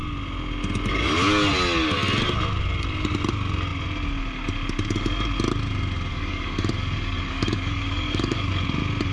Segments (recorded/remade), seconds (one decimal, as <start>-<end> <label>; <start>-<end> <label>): 0.0-6.1 recorded; 6.1-8.5 remade; 8.5-9.1 recorded